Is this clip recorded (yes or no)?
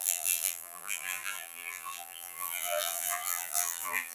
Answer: no